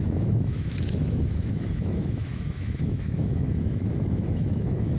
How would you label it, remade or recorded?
remade